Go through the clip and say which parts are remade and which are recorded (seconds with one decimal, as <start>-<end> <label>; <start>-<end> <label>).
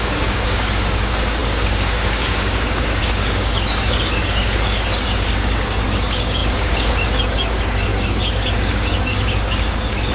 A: 0.0-10.1 remade